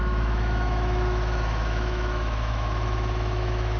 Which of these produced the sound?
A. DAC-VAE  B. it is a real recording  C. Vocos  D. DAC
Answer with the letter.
A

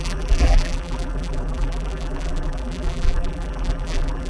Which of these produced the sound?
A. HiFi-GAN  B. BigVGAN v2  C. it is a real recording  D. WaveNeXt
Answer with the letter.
B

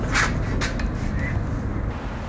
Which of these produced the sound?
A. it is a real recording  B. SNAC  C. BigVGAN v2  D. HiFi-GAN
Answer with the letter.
A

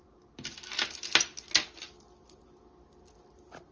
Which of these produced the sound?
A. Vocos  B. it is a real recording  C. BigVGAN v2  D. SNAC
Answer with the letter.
B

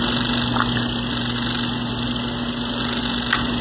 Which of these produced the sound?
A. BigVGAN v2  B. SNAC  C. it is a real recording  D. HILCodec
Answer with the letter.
C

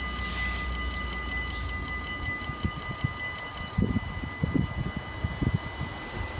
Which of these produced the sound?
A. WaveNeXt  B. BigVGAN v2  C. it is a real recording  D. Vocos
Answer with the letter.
C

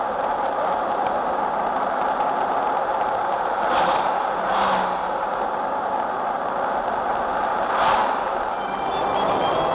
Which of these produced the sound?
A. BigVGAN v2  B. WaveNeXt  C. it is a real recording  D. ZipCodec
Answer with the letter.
C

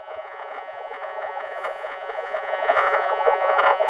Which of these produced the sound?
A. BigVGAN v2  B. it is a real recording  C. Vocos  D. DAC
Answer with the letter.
C